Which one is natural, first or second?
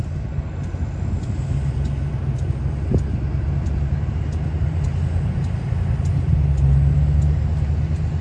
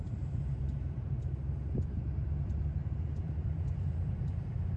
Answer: first